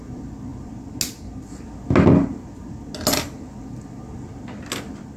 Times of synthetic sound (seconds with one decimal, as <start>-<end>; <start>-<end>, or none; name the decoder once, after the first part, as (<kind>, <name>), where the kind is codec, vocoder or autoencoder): none